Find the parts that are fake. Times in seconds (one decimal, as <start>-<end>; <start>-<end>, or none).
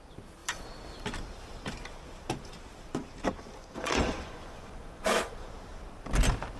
3.6-5.5